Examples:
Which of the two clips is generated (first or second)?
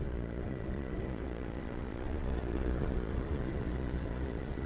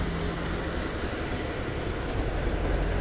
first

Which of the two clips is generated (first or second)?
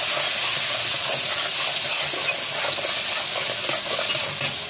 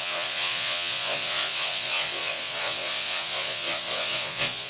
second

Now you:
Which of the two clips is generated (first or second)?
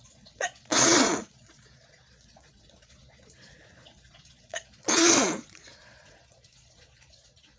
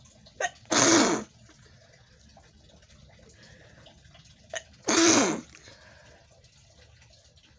first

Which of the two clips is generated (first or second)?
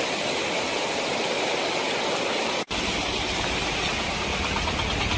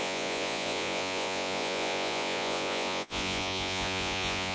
second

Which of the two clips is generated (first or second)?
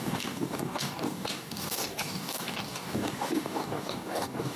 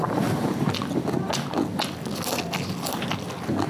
first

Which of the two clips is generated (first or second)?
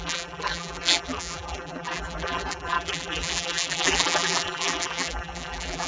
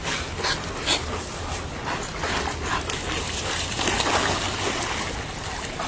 first